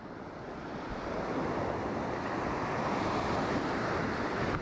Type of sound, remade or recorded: recorded